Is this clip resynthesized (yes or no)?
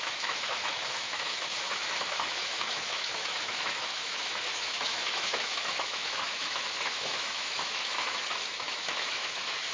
yes